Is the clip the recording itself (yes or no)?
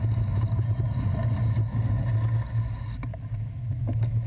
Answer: yes